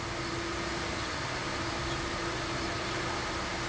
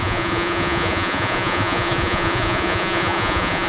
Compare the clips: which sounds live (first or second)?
first